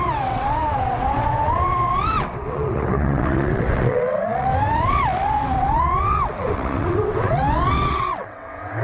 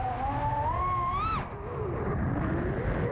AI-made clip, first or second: first